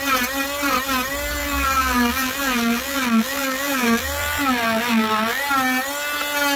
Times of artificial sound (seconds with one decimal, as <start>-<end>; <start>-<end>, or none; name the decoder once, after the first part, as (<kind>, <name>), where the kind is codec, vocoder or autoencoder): 1.4-5.4 (vocoder, BigVGAN v2)